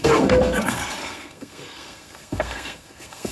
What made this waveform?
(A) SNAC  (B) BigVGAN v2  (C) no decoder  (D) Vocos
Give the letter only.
A